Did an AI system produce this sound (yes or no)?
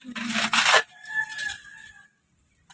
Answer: no